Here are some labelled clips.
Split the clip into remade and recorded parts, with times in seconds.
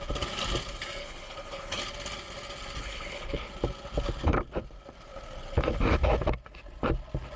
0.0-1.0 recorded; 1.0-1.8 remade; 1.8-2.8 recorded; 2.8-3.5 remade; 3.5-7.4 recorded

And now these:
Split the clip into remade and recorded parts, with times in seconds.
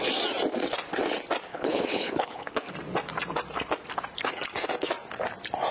0.0-1.5 recorded; 1.5-2.7 remade; 2.7-5.7 recorded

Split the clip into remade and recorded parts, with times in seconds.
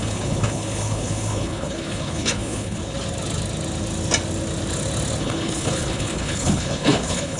0.0-2.8 remade; 2.8-5.2 recorded; 5.2-7.4 remade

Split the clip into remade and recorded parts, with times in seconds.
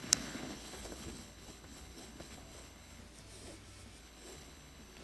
0.0-3.0 remade; 3.0-4.0 recorded; 4.0-5.0 remade